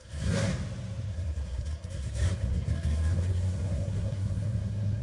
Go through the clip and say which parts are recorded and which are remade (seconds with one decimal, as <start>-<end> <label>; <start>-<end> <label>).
0.0-0.5 remade; 0.5-1.1 recorded; 1.1-5.0 remade